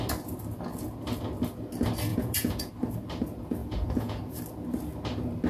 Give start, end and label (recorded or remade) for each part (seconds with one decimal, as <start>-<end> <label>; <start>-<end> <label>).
0.0-2.1 recorded; 2.1-2.7 remade; 2.7-3.6 recorded; 3.6-4.4 remade; 4.4-5.5 recorded